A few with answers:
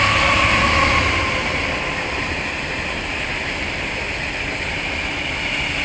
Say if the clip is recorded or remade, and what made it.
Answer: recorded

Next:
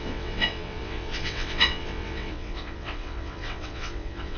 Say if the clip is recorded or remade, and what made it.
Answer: remade, vocoder, WaveNeXt